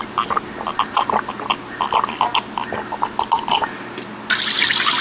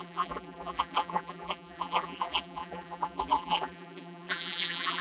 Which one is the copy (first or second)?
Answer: second